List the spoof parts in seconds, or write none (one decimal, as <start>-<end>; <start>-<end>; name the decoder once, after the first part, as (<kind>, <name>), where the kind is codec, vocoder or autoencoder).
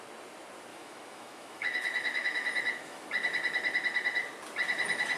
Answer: 0.7-3.1 (autoencoder, DAC-VAE)